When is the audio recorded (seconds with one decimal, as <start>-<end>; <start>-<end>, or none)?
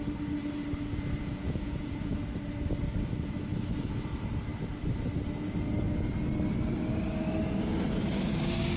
0.0-1.2; 2.2-8.8